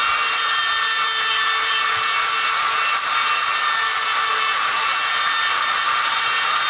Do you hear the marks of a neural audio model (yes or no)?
no